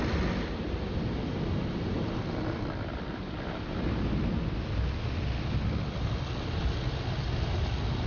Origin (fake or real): real